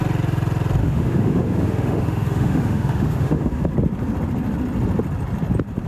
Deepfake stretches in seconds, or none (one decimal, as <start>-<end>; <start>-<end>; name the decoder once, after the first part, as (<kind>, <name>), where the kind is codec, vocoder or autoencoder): 0.8-3.7 (autoencoder, DAC-VAE)

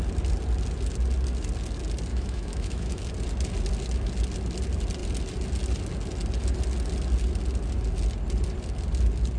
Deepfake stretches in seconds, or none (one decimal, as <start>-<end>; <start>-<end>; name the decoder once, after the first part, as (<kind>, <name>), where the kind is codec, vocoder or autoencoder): 2.1-3.0 (autoencoder, DAC-VAE)

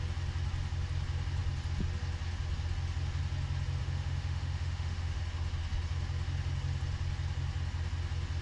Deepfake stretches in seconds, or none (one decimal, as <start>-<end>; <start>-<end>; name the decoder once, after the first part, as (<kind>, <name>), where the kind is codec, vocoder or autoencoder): 3.8-5.2 (autoencoder, DAC-VAE)

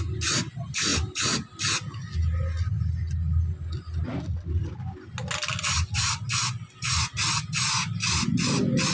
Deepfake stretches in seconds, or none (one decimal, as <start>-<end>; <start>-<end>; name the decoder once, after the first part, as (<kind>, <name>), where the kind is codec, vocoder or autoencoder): none

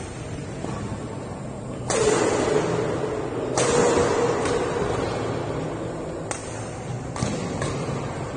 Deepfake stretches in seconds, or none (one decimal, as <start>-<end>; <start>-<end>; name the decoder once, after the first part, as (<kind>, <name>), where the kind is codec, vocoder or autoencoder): none

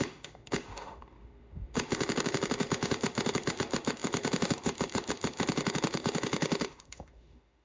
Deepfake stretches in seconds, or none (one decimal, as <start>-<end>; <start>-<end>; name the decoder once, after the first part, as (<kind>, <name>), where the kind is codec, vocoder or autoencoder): 0.0-7.6 (autoencoder, DAC-VAE)